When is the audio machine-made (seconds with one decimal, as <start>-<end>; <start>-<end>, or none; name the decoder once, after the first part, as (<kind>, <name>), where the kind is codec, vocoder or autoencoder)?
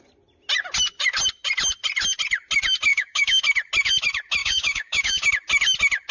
2.9-3.4 (codec, DAC); 4.4-5.3